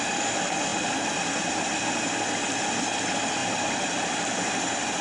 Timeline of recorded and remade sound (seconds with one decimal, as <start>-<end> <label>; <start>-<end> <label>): 0.0-5.0 recorded